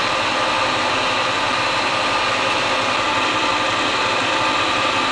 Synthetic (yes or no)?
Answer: no